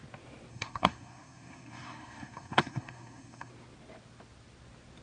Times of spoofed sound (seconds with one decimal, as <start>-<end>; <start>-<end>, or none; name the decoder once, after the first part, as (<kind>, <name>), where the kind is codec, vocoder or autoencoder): 0.5-3.5 (codec, SNAC)

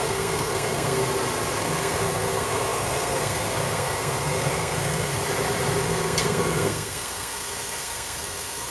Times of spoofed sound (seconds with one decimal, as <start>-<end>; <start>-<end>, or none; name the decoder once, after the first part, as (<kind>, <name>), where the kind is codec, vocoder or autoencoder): 0.0-1.0 (codec, SNAC); 1.6-5.2; 5.8-8.7